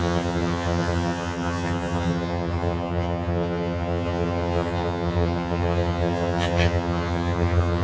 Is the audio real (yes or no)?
no